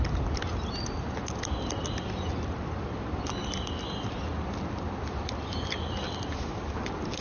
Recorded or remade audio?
recorded